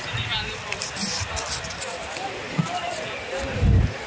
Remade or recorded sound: recorded